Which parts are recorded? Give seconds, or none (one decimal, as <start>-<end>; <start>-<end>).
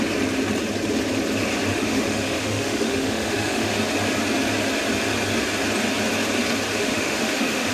0.0-1.7; 3.7-6.8